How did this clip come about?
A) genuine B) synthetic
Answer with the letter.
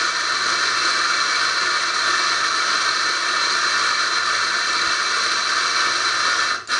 A